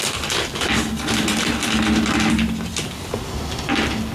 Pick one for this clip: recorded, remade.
recorded